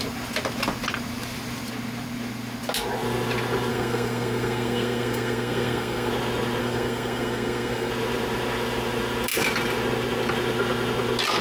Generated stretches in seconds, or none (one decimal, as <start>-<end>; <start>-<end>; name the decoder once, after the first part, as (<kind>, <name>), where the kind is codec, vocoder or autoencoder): 3.7-6.1 (codec, SNAC); 6.6-7.9